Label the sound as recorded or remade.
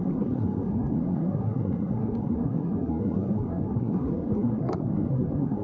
remade